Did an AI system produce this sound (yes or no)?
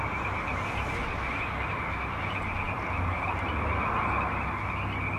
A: no